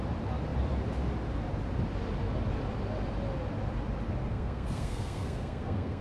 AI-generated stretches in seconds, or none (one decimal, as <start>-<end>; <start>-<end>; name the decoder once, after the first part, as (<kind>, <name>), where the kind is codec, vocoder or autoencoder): 4.3-6.0 (codec, SNAC)

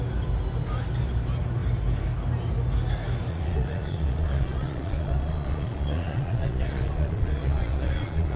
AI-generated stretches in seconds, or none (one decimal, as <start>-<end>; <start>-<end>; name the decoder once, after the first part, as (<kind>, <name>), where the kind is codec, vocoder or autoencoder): 3.3-8.4 (vocoder, Vocos)

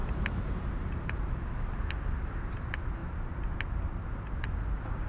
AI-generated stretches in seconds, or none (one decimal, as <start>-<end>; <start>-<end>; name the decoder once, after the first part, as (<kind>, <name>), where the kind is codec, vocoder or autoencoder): 0.0-1.4 (vocoder, BigVGAN v2)

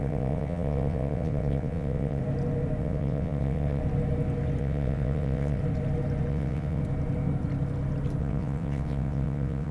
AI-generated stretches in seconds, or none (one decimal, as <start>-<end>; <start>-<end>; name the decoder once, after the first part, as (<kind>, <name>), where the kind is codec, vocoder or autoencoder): 0.0-2.2 (vocoder, WaveNeXt); 2.8-3.8; 4.6-5.6; 6.3-6.8; 8.2-9.7